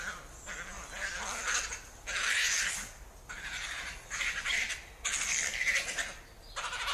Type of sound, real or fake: real